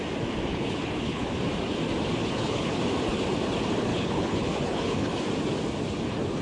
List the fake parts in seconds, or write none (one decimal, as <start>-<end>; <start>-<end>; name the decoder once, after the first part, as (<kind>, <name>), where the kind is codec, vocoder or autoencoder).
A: 0.5-1.3 (codec, HILCodec); 2.2-2.8; 3.9-5.2